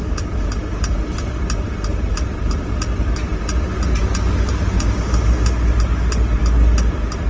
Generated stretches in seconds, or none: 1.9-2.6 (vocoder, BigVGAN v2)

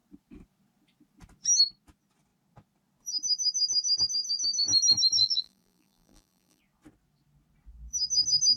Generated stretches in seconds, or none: 5.2-6.6 (vocoder, BigVGAN v2)

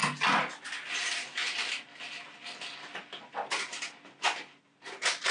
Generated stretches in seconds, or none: 0.9-1.4 (vocoder, BigVGAN v2); 4.6-5.3

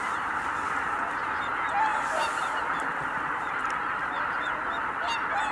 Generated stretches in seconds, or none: 1.9-4.3 (vocoder, BigVGAN v2)

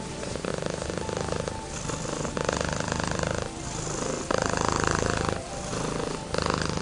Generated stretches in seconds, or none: 0.0-0.5 (vocoder, BigVGAN v2); 4.3-5.7